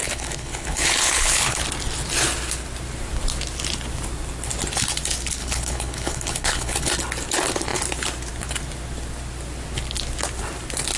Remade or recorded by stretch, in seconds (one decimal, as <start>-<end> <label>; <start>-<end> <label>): 0.0-1.6 remade; 1.6-5.4 recorded; 5.4-6.9 remade; 6.9-11.0 recorded